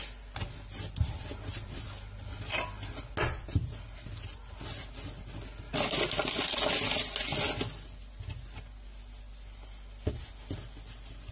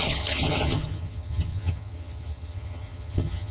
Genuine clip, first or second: first